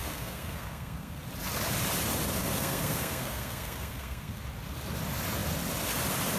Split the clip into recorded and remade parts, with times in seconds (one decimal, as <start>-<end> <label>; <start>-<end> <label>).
0.0-1.2 remade; 1.2-2.4 recorded; 2.4-4.4 remade; 4.4-6.4 recorded